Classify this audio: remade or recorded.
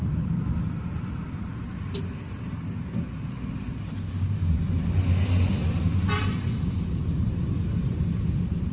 recorded